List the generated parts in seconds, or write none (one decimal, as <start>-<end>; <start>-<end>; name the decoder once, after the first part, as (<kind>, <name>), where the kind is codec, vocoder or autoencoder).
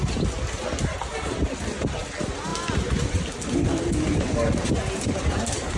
none